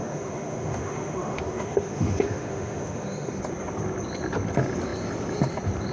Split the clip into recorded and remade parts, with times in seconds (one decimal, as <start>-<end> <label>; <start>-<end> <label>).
0.0-3.4 remade; 3.4-5.9 recorded